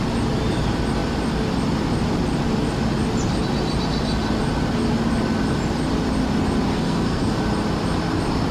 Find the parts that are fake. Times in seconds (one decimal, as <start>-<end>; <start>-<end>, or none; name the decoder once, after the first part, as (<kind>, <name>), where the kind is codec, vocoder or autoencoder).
6.7-7.4 (codec, SNAC)